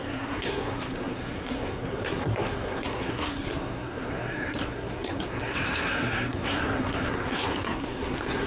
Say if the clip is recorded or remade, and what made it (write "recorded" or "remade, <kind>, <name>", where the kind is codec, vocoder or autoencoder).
remade, codec, SNAC